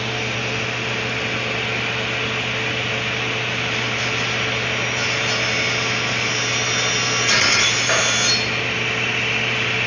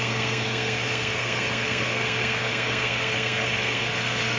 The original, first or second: first